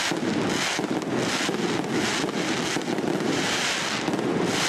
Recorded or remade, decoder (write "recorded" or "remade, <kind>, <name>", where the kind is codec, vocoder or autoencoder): recorded